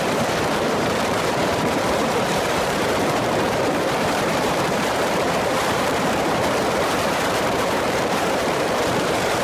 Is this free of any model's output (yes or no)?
no